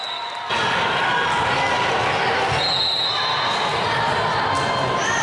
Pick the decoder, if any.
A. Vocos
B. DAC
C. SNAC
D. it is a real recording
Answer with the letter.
D